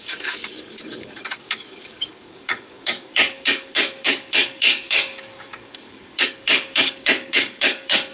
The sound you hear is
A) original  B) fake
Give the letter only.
B